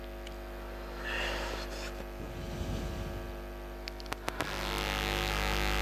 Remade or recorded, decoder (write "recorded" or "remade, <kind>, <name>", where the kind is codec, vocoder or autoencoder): recorded